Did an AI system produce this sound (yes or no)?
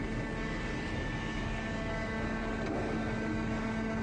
yes